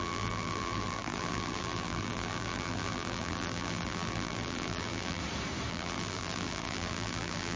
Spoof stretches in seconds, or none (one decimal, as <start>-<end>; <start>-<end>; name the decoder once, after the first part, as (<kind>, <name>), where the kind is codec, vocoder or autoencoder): 0.0-5.2 (vocoder, BigVGAN v2); 5.7-7.6